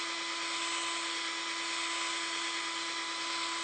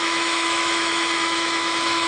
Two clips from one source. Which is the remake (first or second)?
second